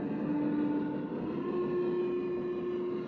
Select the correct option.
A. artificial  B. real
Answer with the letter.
B